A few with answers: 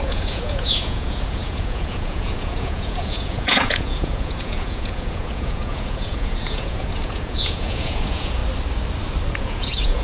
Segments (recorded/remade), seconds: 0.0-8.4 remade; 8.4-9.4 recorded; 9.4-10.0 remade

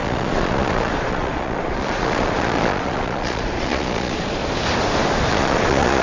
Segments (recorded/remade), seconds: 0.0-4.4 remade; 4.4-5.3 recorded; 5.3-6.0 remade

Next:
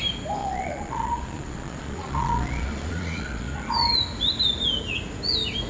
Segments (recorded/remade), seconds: 0.0-0.4 recorded; 0.4-3.7 remade; 3.7-5.7 recorded

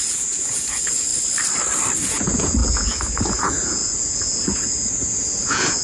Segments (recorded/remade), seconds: 0.0-1.1 remade; 1.1-2.1 recorded; 2.1-5.8 remade